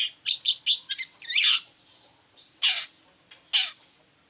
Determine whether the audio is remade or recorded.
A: recorded